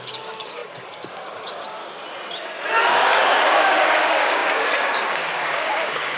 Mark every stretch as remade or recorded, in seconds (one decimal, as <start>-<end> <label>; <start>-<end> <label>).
0.0-1.8 remade; 1.8-2.9 recorded; 2.9-6.2 remade